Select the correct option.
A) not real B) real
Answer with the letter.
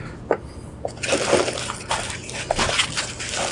B